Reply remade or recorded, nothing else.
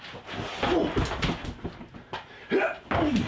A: recorded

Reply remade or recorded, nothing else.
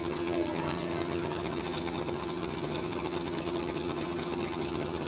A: remade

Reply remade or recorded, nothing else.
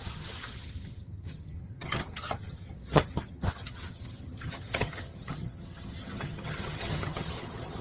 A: remade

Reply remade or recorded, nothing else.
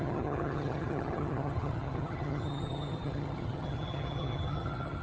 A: remade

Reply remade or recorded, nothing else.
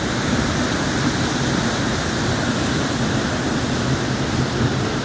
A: recorded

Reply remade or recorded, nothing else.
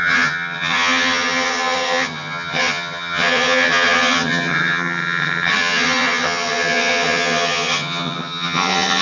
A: remade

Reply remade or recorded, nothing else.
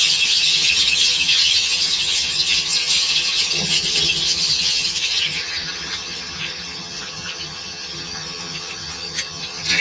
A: remade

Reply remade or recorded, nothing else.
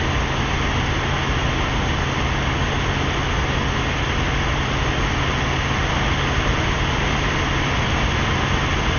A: recorded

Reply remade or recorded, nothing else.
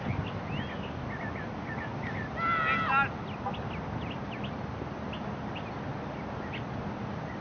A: recorded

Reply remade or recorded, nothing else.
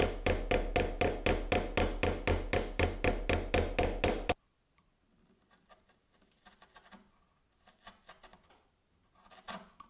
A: recorded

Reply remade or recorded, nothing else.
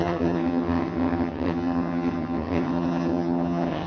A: remade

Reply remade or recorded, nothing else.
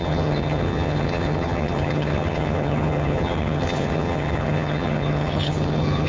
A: remade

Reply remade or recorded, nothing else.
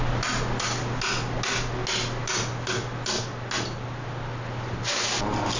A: recorded